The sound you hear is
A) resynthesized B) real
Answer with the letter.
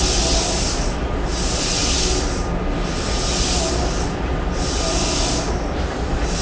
B